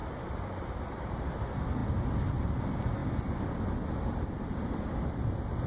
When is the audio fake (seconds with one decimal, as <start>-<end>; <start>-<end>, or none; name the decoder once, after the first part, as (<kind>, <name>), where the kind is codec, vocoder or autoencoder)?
0.0-1.3 (vocoder, BigVGAN v2)